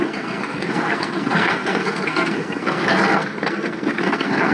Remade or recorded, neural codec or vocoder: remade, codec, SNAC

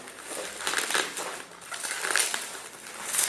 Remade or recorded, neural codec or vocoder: recorded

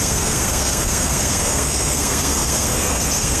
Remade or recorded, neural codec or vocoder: remade, codec, SNAC